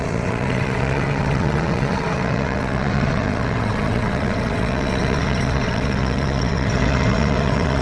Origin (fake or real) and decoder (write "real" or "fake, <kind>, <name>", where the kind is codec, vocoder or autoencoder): fake, vocoder, WaveNeXt